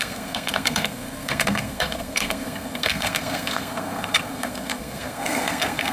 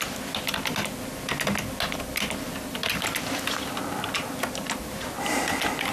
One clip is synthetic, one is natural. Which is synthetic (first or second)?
first